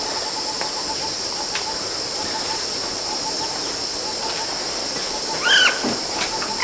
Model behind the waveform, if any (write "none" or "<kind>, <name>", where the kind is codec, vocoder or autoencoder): none